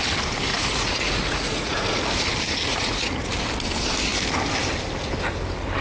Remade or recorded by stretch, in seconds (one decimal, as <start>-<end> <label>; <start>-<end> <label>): 0.0-0.5 recorded; 0.5-2.0 remade; 2.0-2.7 recorded; 2.7-3.3 remade; 3.3-5.8 recorded